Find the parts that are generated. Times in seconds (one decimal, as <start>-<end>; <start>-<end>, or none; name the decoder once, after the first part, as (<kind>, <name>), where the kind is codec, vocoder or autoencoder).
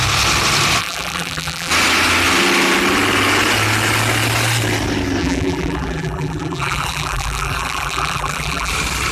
0.8-1.7 (vocoder, BigVGAN v2); 5.2-8.7